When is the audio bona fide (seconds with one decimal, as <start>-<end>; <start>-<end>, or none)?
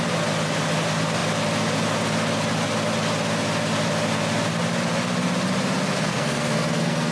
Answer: 0.0-6.1